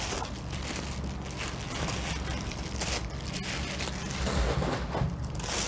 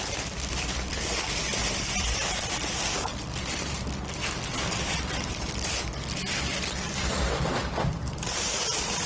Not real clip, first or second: second